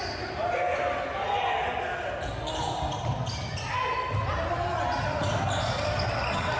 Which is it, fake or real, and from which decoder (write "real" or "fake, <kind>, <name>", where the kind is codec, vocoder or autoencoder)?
real